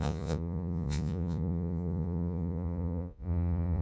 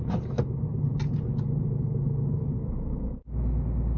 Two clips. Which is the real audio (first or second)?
second